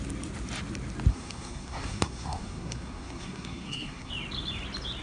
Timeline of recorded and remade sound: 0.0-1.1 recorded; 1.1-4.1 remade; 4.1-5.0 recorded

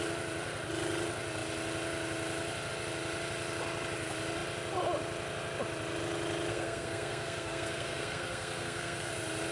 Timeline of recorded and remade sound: 0.0-6.5 recorded; 6.5-9.1 remade; 9.1-9.5 recorded

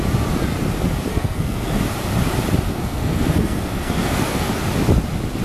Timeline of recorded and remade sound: 0.0-1.1 recorded; 1.1-1.8 remade; 1.8-2.7 recorded; 2.7-4.5 remade; 4.5-5.4 recorded

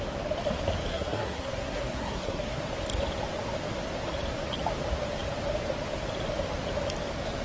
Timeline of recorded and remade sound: 0.0-0.9 recorded; 0.9-2.6 remade; 2.6-7.4 recorded

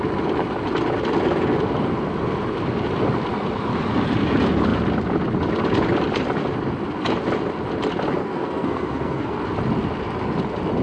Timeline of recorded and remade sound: 0.0-8.2 recorded; 8.2-9.4 remade; 9.4-10.8 recorded

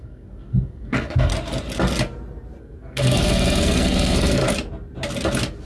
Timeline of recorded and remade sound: 0.0-1.3 remade; 1.3-2.6 recorded; 2.6-4.4 remade; 4.4-5.6 recorded

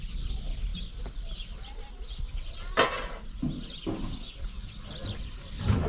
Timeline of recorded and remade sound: 0.0-5.9 recorded

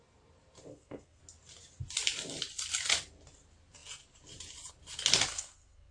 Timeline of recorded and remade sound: 0.0-0.7 recorded; 0.7-1.2 remade; 1.2-5.3 recorded; 5.3-5.9 remade